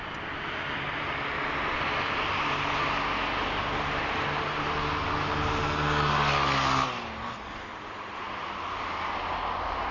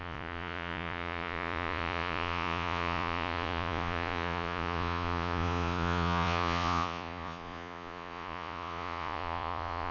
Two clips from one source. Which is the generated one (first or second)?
second